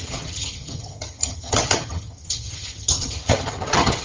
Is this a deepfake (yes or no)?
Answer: yes